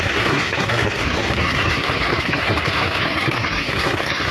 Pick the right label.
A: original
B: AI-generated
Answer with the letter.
B